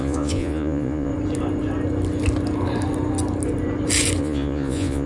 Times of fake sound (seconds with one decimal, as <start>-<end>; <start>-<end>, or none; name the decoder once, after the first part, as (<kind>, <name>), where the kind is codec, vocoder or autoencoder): 0.0-1.1 (vocoder, Vocos); 4.2-5.1